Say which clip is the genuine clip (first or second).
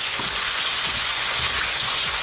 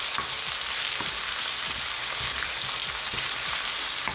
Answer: second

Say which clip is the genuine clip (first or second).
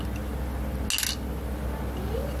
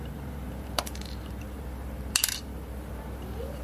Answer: first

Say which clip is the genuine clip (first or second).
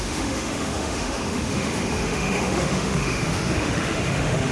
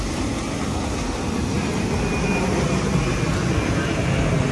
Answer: second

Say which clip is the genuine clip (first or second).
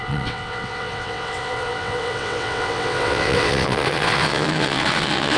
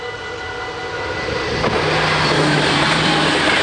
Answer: second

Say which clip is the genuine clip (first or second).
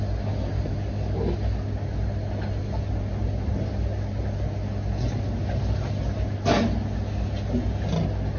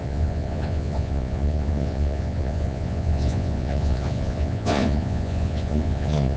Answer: first